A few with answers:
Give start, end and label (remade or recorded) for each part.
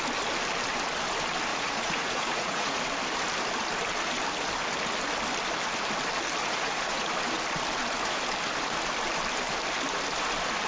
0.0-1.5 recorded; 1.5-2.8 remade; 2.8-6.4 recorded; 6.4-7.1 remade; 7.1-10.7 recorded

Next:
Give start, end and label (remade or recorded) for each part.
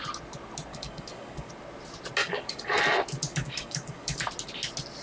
0.0-0.7 recorded; 0.7-1.5 remade; 1.5-2.2 recorded; 2.2-2.8 remade; 2.8-3.3 recorded; 3.3-4.2 remade; 4.2-5.0 recorded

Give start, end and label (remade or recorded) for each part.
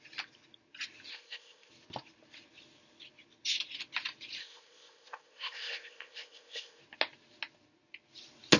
0.0-1.1 recorded; 1.1-1.7 remade; 1.7-4.4 recorded; 4.4-6.8 remade; 6.8-8.6 recorded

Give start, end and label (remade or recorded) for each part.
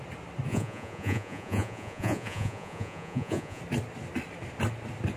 0.0-0.5 recorded; 0.5-3.6 remade; 3.6-5.2 recorded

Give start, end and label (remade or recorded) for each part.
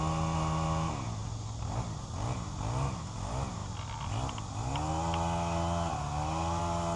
0.0-7.0 recorded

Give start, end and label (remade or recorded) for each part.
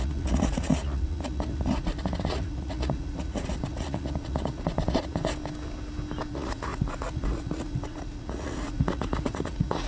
0.0-5.2 remade; 5.2-6.3 recorded; 6.3-9.9 remade